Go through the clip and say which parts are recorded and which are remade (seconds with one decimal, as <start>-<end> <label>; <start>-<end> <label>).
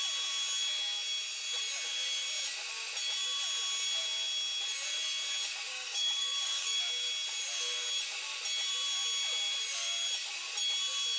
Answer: 0.0-5.7 recorded; 5.7-6.8 remade; 6.8-11.2 recorded